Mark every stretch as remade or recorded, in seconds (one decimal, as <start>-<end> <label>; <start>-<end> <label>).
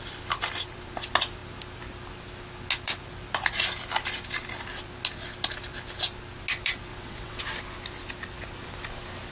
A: 0.0-6.9 recorded; 6.9-7.4 remade; 7.4-9.3 recorded